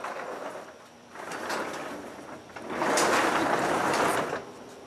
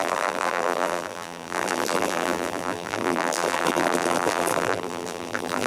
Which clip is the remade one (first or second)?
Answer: second